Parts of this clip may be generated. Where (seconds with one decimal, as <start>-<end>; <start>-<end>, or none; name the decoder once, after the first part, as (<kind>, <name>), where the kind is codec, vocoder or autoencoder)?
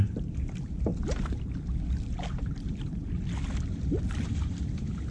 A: 0.0-0.9 (vocoder, BigVGAN v2); 2.3-3.0; 4.2-5.1